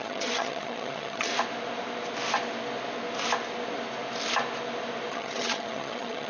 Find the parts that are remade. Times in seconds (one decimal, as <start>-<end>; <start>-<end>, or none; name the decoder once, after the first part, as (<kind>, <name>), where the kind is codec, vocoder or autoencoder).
0.0-1.3 (vocoder, HiFi-GAN); 5.1-6.3